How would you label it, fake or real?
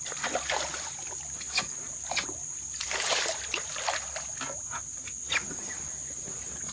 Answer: real